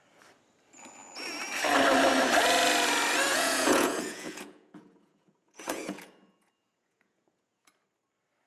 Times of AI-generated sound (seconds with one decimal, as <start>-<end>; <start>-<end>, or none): 3.3-7.7